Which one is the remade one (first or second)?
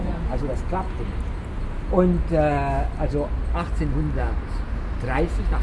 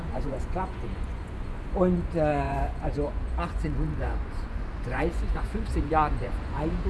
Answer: second